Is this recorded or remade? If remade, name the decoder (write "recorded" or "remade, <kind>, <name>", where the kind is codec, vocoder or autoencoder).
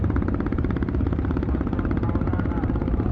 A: remade, vocoder, BigVGAN v2